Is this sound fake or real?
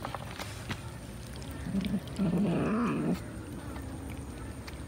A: real